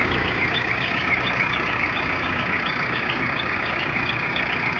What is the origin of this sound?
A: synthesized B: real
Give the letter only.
A